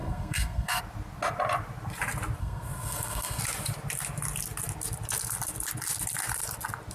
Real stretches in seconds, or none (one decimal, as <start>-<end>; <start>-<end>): 0.8-2.4; 3.4-6.9